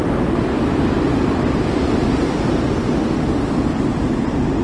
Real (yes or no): yes